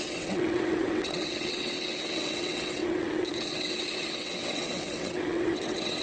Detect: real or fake fake